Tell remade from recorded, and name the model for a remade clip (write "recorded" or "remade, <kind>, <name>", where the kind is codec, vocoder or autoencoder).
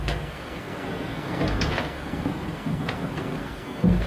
remade, codec, SNAC